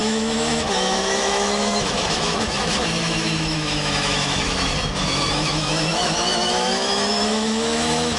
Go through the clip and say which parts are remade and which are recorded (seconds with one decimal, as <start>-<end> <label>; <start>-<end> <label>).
0.0-8.2 remade